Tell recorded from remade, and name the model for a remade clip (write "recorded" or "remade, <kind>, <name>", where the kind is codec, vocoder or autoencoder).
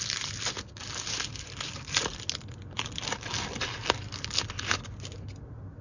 recorded